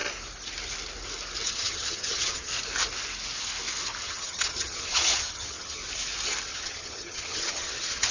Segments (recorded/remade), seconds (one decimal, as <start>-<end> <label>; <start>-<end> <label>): 0.0-1.5 recorded; 1.5-2.5 remade; 2.5-4.0 recorded; 4.0-5.8 remade; 5.8-6.5 recorded; 6.5-8.1 remade